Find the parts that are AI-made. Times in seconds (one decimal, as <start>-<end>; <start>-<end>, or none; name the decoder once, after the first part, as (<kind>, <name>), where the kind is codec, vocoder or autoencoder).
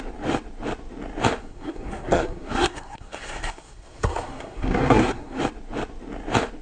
1.4-5.4 (codec, SNAC)